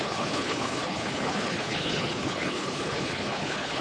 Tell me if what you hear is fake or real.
fake